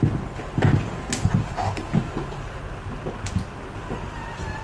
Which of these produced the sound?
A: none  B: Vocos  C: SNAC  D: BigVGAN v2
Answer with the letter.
A